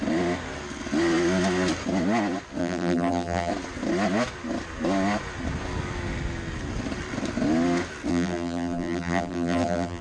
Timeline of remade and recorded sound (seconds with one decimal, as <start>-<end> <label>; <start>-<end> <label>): 0.0-2.6 recorded; 2.6-3.5 remade; 3.5-8.1 recorded; 8.1-10.0 remade